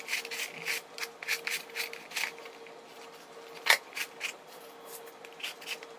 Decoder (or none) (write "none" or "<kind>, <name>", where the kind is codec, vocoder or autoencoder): none